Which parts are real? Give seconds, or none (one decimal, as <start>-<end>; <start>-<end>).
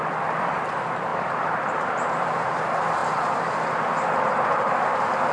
0.0-1.1; 2.6-3.0; 3.5-5.3